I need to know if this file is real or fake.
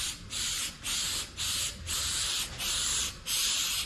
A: real